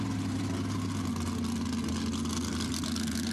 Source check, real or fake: real